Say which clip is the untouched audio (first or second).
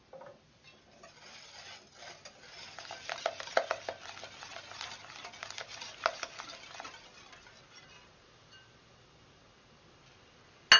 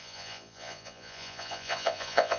first